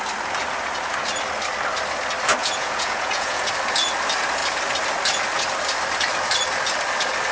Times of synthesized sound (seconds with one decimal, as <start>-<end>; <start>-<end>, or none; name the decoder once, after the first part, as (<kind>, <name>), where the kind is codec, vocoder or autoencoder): 2.4-3.5 (vocoder, Vocos)